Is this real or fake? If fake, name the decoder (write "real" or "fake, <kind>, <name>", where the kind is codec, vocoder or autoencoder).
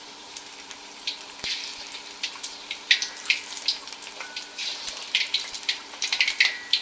fake, vocoder, BigVGAN v2